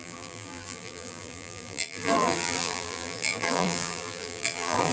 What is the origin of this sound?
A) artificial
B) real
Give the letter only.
A